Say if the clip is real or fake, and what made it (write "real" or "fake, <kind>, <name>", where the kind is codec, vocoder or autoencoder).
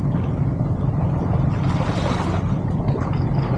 real